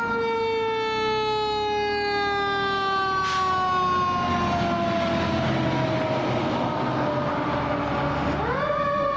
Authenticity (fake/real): real